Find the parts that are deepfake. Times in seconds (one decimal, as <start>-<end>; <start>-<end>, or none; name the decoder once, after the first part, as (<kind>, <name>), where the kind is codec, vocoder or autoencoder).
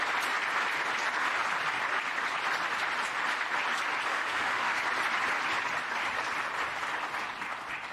4.1-4.8 (autoencoder, DAC-VAE)